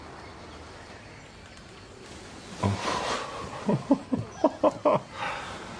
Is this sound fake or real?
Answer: real